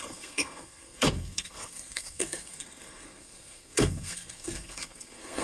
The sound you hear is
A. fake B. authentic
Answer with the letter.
A